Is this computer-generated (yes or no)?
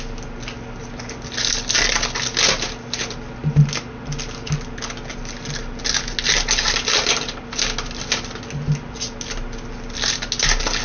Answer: no